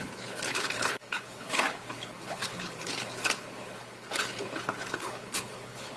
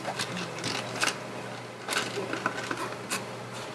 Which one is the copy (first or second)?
first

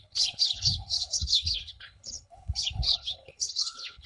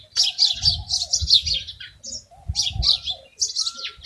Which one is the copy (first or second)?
first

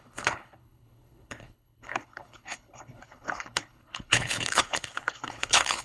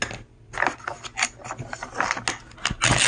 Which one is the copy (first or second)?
first